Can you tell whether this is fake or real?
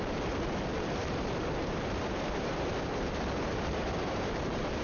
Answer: fake